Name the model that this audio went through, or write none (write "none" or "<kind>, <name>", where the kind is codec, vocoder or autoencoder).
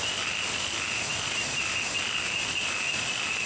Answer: none